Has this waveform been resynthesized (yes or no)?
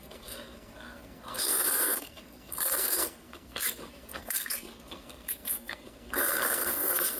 yes